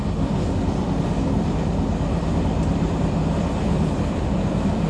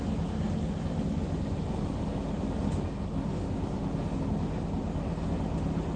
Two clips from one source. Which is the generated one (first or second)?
first